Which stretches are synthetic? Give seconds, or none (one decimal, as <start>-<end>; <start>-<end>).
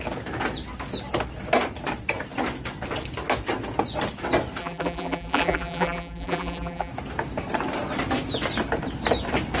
4.6-6.9